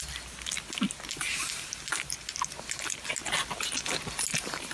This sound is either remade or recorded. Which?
recorded